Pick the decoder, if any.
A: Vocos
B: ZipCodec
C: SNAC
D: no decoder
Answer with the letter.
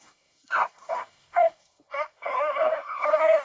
C